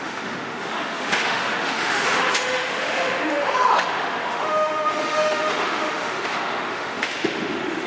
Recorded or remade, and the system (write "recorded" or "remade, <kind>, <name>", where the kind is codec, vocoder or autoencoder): remade, autoencoder, DAC-VAE